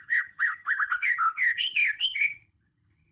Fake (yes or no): yes